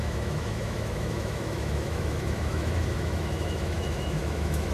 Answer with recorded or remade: remade